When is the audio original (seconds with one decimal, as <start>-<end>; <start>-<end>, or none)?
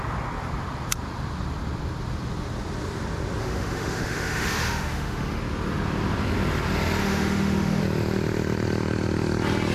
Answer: 0.0-3.4; 5.4-7.0; 7.8-9.7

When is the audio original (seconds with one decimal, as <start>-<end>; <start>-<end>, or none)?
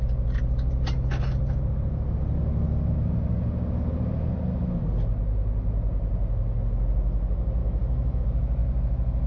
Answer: 0.0-7.6; 8.2-9.3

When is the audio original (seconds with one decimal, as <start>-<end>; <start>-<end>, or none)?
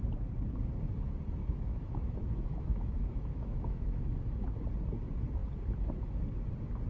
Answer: 0.0-1.4; 4.5-6.9